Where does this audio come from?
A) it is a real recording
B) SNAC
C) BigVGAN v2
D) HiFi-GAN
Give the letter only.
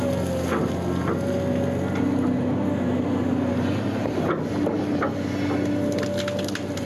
A